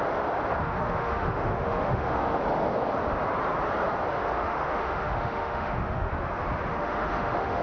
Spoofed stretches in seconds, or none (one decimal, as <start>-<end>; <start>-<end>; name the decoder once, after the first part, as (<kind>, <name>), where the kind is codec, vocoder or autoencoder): 0.6-2.4 (autoencoder, DAC-VAE); 4.1-6.1; 6.7-7.6